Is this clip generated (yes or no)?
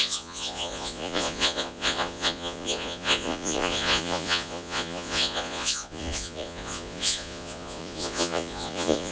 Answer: yes